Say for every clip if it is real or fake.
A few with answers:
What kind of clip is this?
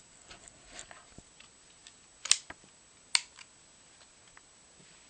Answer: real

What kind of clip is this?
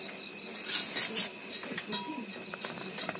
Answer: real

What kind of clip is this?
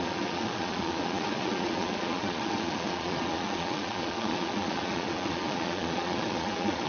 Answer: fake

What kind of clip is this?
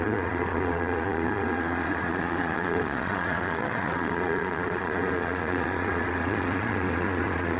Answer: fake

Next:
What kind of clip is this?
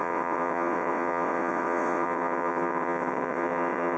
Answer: fake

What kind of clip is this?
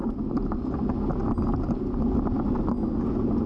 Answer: real